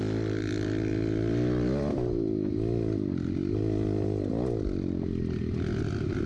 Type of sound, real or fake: real